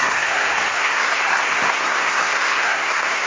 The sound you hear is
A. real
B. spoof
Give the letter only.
B